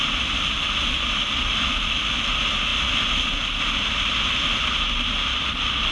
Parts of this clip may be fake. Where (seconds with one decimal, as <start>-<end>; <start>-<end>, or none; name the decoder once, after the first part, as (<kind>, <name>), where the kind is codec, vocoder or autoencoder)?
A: none